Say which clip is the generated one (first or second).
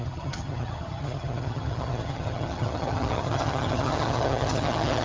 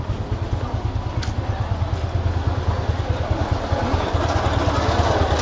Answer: first